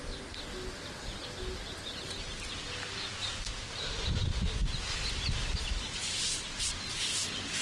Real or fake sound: real